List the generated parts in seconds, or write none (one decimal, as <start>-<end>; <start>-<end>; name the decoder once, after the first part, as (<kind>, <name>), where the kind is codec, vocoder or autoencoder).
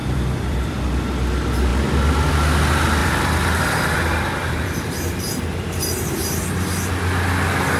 0.0-0.7 (vocoder, BigVGAN v2); 3.0-5.4